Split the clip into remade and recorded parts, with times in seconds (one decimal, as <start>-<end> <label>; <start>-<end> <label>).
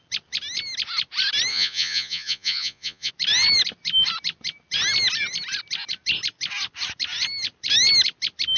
0.0-1.5 recorded; 1.5-3.1 remade; 3.1-8.6 recorded